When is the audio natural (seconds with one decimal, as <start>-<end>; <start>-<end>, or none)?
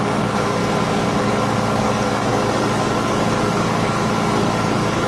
0.6-1.2